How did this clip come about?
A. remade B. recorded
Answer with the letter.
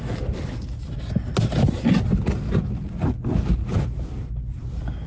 B